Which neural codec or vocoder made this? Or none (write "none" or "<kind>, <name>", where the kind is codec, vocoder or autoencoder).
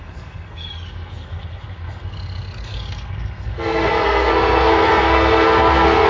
codec, SNAC